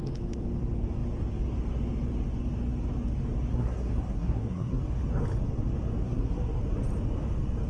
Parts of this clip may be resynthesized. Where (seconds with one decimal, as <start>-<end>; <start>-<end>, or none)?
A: 3.5-4.8; 6.0-6.6